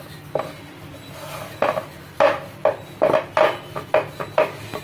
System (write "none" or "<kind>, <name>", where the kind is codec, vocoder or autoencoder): none